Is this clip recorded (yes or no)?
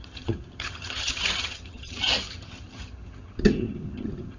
no